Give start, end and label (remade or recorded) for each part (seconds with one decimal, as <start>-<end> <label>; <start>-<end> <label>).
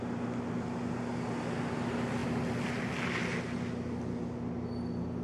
0.0-5.2 recorded